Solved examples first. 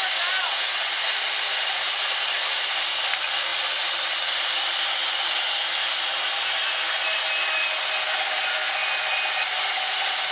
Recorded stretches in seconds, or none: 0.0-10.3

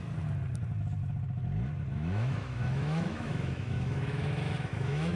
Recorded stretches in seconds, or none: 0.0-1.9

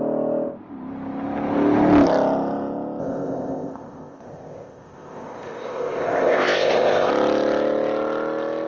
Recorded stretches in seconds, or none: 0.0-3.0; 7.1-8.7

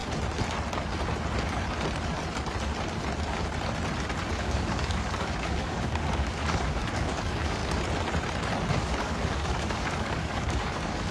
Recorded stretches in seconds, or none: 0.0-4.3; 7.6-8.7

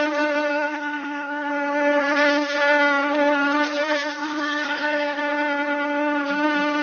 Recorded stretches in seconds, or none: 0.0-0.5; 1.5-4.2; 5.2-6.8